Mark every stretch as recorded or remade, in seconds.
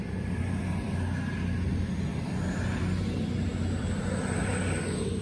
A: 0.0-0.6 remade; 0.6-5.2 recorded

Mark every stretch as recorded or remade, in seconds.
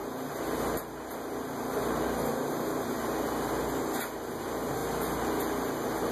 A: 0.0-6.1 recorded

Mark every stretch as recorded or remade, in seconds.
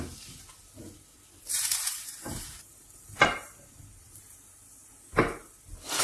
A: 0.0-1.5 recorded; 1.5-5.1 remade; 5.1-6.0 recorded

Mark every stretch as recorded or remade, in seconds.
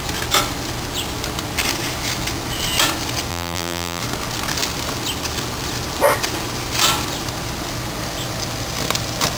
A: 0.0-3.3 recorded; 3.3-4.0 remade; 4.0-9.4 recorded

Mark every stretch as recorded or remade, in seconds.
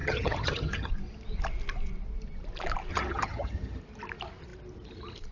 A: 0.0-0.9 remade; 0.9-2.9 recorded; 2.9-3.8 remade; 3.8-5.3 recorded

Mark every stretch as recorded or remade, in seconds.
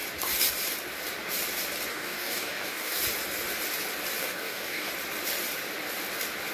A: 0.0-1.9 recorded; 1.9-3.0 remade; 3.0-4.2 recorded; 4.2-4.9 remade; 4.9-6.5 recorded